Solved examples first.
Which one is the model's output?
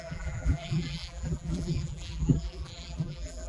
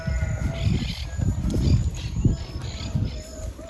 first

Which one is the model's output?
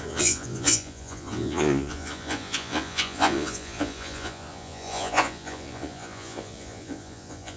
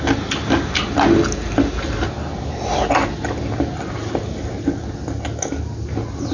first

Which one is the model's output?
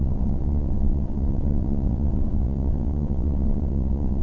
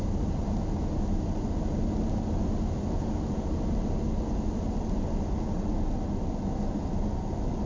first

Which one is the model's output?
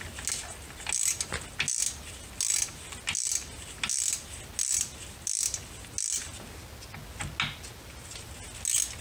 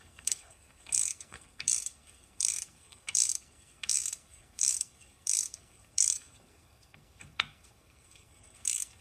second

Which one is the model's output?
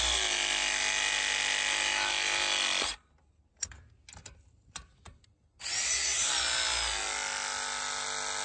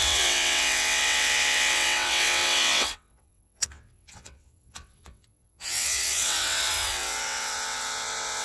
second